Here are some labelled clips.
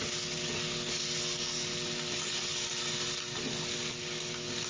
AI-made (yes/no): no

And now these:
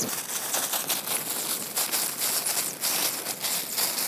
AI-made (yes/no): no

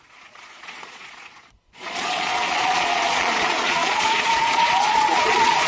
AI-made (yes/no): yes